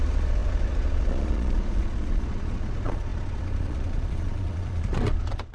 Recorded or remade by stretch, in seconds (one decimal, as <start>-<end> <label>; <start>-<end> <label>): 0.0-5.5 remade